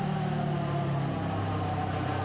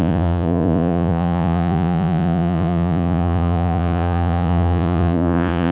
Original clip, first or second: first